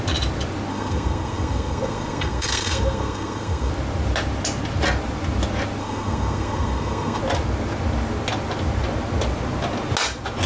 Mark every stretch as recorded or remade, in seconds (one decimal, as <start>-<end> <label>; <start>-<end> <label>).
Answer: 0.0-0.7 recorded; 0.7-3.7 remade; 3.7-5.8 recorded; 5.8-7.2 remade; 7.2-10.5 recorded